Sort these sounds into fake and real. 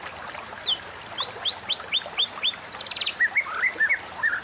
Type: real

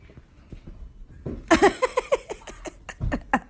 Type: real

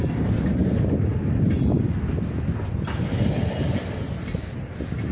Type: real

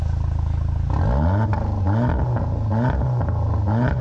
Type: real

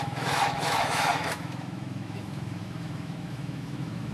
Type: fake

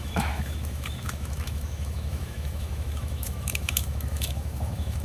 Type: fake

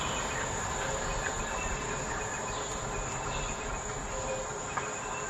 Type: real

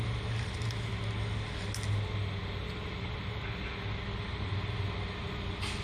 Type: real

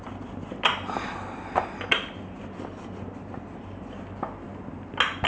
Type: real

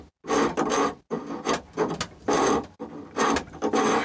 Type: real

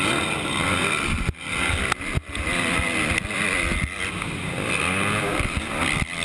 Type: real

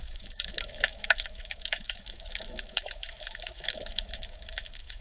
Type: fake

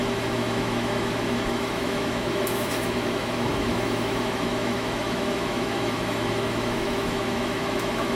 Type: fake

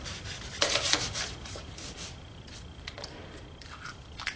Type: real